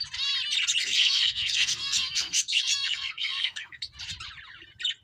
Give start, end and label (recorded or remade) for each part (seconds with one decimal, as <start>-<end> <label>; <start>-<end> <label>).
0.0-0.8 recorded; 0.8-3.8 remade; 3.8-5.0 recorded